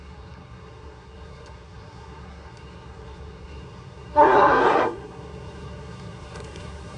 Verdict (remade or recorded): remade